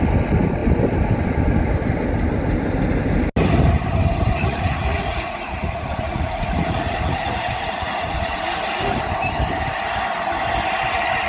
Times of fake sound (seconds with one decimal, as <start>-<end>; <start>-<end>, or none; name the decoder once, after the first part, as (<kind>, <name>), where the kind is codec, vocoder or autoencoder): 4.4-8.4 (vocoder, Vocos)